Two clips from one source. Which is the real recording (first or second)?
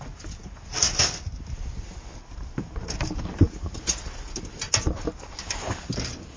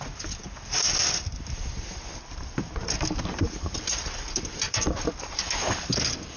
first